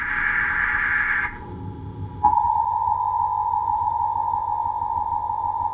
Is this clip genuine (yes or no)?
no